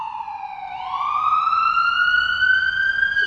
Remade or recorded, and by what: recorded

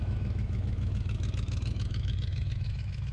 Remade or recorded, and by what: remade, autoencoder, DAC-VAE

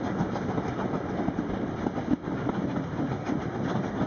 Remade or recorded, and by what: recorded